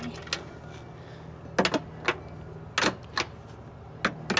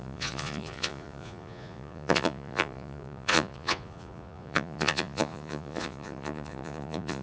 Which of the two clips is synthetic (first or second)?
second